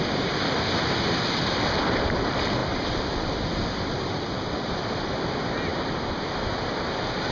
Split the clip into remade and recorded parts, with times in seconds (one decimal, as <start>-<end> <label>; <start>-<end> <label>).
0.0-2.6 recorded; 2.6-4.7 remade; 4.7-5.7 recorded; 5.7-6.7 remade; 6.7-7.3 recorded